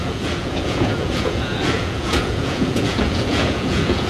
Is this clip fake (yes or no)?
yes